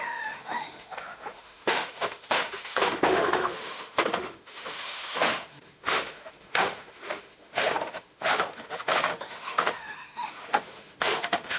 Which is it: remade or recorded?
remade